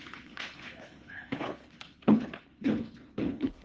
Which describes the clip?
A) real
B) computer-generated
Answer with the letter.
B